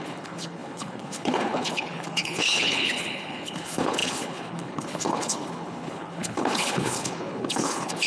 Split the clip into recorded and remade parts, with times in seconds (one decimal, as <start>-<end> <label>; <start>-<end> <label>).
0.0-8.1 remade